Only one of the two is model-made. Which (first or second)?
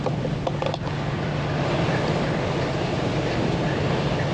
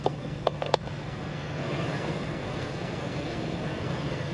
second